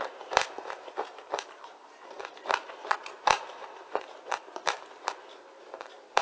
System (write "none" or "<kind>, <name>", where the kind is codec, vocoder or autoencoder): vocoder, BigVGAN v2